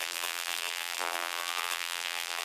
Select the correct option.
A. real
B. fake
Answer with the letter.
B